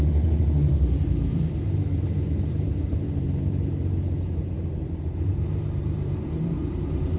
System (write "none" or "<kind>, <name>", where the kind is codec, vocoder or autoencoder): vocoder, BigVGAN v2